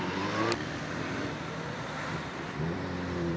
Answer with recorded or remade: remade